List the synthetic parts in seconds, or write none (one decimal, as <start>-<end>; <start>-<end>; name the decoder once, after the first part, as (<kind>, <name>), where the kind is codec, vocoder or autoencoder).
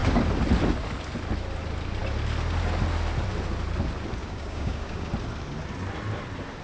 4.2-5.1 (codec, DAC)